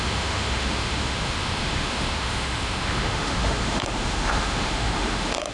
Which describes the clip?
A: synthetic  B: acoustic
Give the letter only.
A